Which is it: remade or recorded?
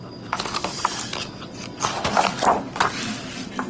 recorded